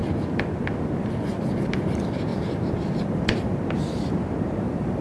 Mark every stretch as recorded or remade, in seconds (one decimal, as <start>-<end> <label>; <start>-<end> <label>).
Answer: 0.0-5.0 remade